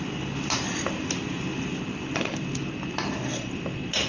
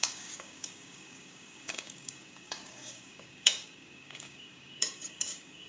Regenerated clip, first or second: second